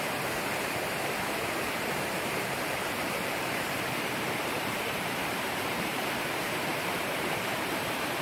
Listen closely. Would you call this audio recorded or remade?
remade